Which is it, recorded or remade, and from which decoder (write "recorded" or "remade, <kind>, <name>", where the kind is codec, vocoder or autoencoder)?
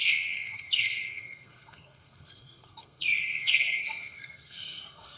remade, codec, SNAC